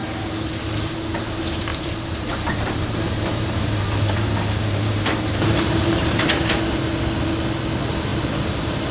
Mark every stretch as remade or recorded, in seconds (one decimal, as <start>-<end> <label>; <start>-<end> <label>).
0.0-0.6 remade; 0.6-1.7 recorded; 1.7-6.4 remade; 6.4-8.9 recorded